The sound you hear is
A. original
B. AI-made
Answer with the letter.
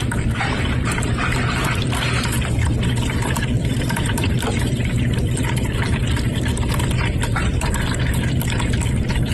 B